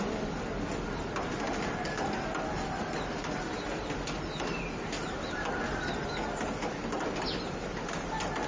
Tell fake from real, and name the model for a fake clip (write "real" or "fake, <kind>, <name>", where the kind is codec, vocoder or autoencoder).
real